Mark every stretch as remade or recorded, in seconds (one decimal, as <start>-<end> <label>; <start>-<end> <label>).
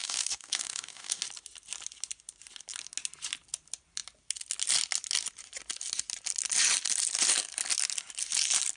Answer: 0.0-1.2 remade; 1.2-8.8 recorded